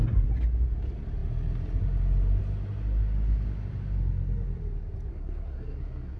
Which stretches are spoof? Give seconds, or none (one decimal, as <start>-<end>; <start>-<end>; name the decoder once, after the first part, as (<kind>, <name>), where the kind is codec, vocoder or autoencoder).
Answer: 5.1-6.2 (codec, SNAC)